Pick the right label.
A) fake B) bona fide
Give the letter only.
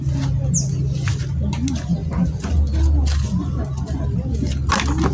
B